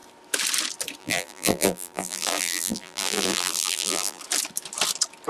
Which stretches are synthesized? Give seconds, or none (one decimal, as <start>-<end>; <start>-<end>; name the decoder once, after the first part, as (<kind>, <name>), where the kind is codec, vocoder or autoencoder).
1.0-4.2 (vocoder, BigVGAN v2)